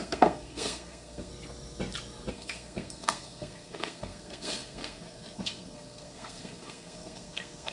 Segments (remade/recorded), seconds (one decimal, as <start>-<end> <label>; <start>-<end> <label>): 0.0-1.3 remade; 1.3-2.3 recorded; 2.3-7.7 remade